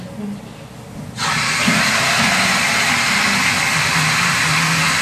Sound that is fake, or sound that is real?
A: real